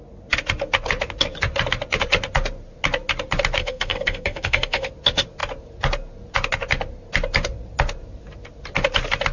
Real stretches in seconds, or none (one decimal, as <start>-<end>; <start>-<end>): 0.0-3.6; 4.9-9.3